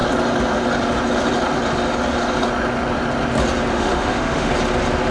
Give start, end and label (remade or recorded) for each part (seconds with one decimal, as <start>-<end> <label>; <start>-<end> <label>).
0.0-3.7 recorded; 3.7-4.5 remade; 4.5-5.1 recorded